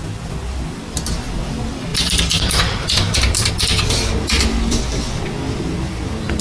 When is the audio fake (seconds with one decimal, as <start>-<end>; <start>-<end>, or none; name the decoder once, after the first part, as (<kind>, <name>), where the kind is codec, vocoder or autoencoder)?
1.9-3.5 (vocoder, BigVGAN v2)